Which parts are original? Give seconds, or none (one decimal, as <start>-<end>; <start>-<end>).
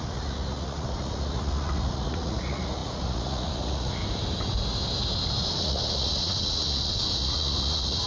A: 4.0-5.6